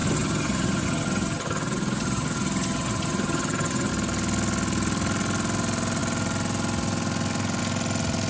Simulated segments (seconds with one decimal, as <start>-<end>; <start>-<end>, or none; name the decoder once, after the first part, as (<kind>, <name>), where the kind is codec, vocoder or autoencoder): 0.0-3.9 (vocoder, HiFi-GAN)

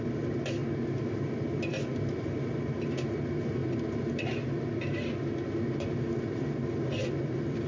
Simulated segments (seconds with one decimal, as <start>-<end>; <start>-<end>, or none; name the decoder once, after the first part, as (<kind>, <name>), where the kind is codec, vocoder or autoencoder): none

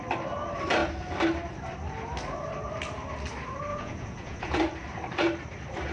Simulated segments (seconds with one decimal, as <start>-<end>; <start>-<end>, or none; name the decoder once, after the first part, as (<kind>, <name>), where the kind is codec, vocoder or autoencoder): 3.7-4.6 (vocoder, Vocos)

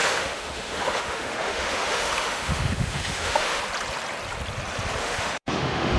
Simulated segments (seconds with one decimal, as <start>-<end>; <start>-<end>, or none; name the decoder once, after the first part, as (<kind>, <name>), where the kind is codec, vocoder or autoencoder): 0.0-3.6 (autoencoder, DAC-VAE); 5.0-6.0

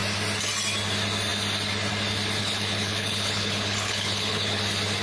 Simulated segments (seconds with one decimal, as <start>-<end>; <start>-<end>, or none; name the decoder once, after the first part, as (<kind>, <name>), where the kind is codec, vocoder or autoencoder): 2.4-4.6 (codec, HILCodec)

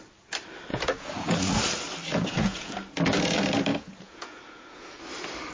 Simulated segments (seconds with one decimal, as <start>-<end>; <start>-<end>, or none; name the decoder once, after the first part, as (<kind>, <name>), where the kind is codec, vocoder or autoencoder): 0.7-1.6 (vocoder, Vocos); 2.1-2.7; 3.7-5.0

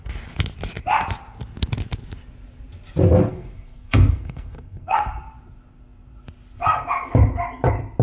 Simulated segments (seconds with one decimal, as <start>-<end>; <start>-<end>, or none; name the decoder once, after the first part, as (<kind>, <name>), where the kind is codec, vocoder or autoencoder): 3.3-5.1 (codec, SNAC)

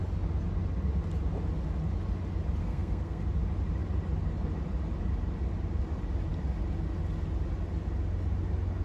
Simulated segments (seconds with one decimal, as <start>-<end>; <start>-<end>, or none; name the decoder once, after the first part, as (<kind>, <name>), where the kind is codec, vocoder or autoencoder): 2.6-3.2 (codec, SNAC)